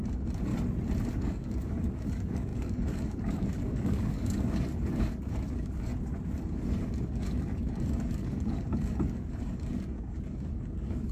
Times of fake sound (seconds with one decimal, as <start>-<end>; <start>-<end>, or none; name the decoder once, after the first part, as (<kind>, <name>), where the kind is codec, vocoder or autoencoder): 0.0-0.5 (codec, DAC); 1.1-5.9; 6.7-11.1